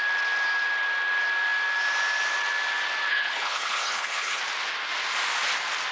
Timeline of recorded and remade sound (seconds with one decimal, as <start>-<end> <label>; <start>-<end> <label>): 0.0-3.1 recorded; 3.1-4.4 remade; 4.4-5.9 recorded